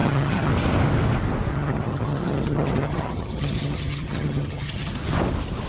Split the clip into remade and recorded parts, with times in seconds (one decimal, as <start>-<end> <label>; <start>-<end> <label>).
0.0-0.5 remade; 0.5-1.5 recorded; 1.5-4.9 remade; 4.9-5.7 recorded